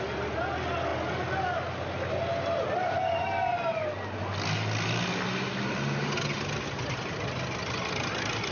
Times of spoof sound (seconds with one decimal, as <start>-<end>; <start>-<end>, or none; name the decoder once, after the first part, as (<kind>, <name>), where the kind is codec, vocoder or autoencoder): none